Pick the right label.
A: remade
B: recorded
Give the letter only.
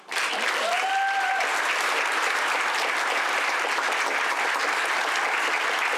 B